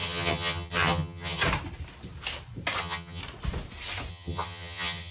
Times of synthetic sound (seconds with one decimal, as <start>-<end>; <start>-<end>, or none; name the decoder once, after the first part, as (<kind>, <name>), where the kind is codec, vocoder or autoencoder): 0.0-1.4 (vocoder, HiFi-GAN); 2.8-3.2; 4.1-5.1